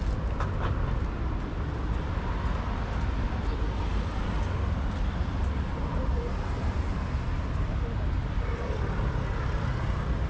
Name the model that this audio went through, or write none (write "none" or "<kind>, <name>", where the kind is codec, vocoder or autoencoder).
none